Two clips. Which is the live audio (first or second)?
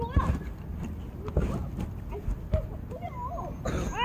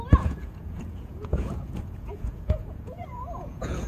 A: first